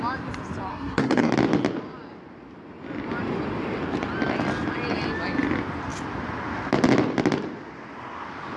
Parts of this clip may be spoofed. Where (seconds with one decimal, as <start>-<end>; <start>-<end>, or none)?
0.7-1.3